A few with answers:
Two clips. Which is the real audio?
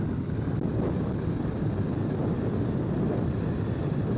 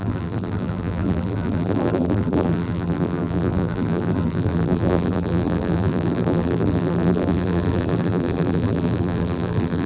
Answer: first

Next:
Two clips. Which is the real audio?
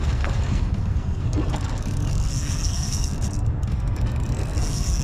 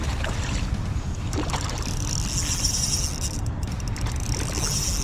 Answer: second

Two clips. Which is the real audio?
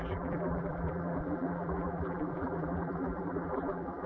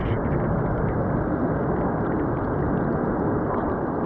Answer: second